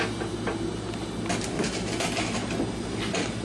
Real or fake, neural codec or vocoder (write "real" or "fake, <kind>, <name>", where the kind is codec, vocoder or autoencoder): real